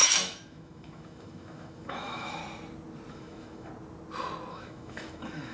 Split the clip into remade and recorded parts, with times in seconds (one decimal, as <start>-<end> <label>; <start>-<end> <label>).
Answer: 0.0-2.4 remade; 2.4-3.1 recorded; 3.1-3.7 remade; 3.7-4.5 recorded; 4.5-5.5 remade